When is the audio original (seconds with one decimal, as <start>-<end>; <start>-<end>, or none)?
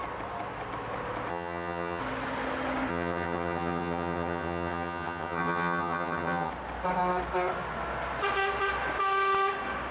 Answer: 0.0-1.3; 2.0-2.9; 6.5-9.9